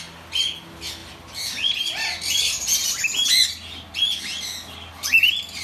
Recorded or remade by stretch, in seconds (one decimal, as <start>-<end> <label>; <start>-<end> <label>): 0.0-5.6 recorded